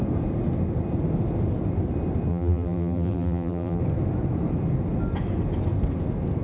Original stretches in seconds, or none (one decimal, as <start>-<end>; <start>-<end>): 0.0-2.3; 3.8-6.4